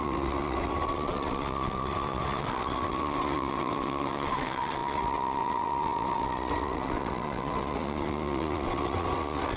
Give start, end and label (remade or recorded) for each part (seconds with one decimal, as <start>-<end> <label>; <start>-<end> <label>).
0.0-9.6 remade